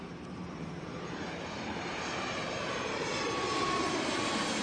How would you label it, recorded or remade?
remade